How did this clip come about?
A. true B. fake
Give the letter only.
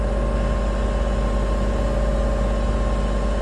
A